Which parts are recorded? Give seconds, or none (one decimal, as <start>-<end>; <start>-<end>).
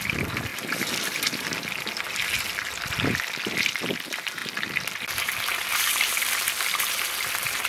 0.0-7.7